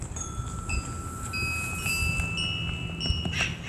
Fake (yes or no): no